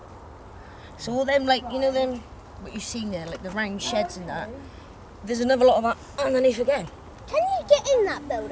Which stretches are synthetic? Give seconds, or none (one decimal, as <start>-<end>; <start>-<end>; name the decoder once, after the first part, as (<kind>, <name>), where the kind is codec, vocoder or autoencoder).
none